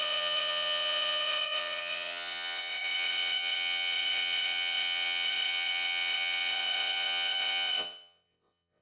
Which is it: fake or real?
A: fake